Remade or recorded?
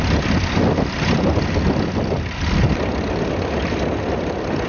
recorded